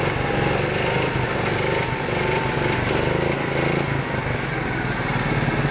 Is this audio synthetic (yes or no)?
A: no